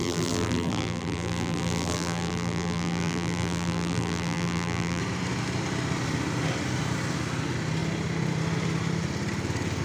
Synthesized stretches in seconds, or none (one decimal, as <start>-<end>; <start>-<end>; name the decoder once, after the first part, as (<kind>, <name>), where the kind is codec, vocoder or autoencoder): 0.0-5.0 (vocoder, BigVGAN v2)